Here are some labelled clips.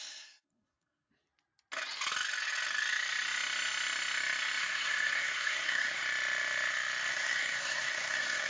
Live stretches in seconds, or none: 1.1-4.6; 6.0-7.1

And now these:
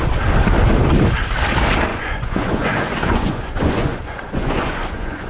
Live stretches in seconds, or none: 0.0-1.9

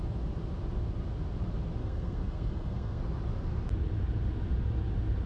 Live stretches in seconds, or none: 0.0-1.8; 3.0-5.3